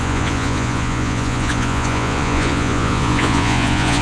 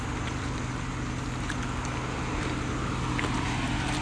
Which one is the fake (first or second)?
first